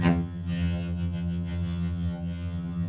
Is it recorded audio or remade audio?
remade